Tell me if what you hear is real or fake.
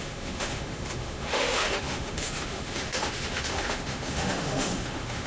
fake